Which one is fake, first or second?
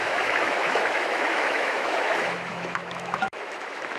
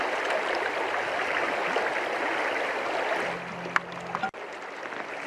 first